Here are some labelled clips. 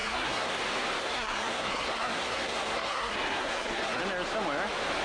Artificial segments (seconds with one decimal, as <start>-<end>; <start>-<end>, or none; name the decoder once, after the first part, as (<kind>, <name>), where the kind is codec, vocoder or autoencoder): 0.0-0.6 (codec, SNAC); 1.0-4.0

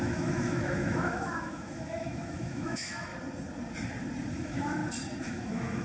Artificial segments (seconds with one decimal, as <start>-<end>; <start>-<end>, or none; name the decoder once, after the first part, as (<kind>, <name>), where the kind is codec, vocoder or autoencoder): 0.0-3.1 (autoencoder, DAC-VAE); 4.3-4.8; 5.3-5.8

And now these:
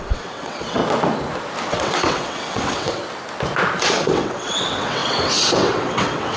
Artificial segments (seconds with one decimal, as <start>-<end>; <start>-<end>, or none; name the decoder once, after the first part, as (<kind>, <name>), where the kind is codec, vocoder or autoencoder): 0.0-0.8 (vocoder, WaveNeXt); 1.7-3.0; 3.8-6.4

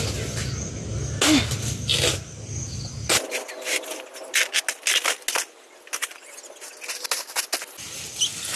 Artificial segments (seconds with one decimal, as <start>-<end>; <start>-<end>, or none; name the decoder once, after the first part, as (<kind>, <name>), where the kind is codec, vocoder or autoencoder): none

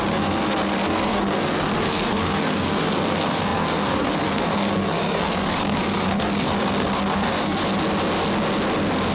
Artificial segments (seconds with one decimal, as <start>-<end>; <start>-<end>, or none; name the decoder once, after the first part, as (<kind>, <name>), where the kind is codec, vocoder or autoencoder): 0.0-7.6 (codec, SNAC)